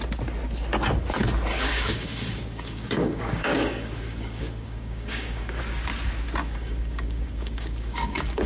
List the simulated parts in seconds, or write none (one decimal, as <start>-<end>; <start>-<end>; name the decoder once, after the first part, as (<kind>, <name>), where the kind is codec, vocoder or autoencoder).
1.5-5.6 (codec, DAC); 6.4-8.5